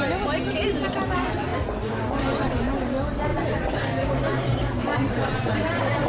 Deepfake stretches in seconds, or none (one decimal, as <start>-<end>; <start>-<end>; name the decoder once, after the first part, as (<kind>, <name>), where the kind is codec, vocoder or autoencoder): 3.3-6.1 (vocoder, BigVGAN v2)